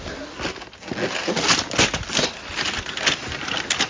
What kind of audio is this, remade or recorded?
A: recorded